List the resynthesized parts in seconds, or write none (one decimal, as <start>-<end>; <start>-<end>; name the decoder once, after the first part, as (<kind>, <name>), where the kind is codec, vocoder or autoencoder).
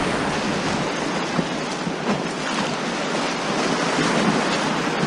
none